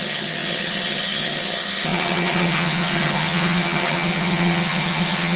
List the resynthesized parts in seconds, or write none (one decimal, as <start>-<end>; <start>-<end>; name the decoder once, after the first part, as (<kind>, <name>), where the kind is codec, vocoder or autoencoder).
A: 0.0-5.4 (vocoder, HiFi-GAN)